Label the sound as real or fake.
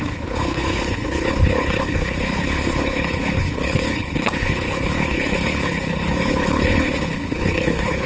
fake